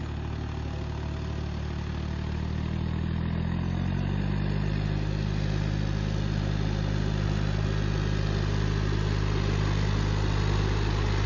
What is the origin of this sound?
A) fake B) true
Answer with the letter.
B